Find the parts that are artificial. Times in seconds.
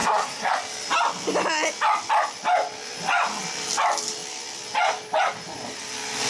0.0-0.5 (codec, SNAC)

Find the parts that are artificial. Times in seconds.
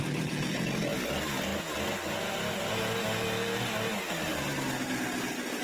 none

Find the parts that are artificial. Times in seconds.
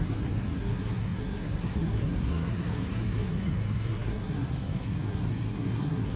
0.0-6.2 (codec, SNAC)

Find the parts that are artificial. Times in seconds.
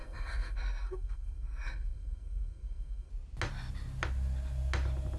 0.0-3.1 (codec, SNAC)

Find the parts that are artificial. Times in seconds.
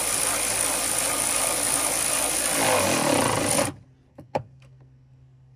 4.1-5.6 (codec, SNAC)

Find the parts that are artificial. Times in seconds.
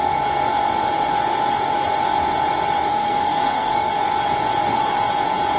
2.9-3.9 (codec, SNAC)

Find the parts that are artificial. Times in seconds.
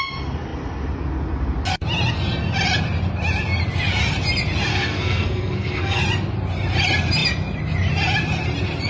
4.7-6.0 (codec, SNAC)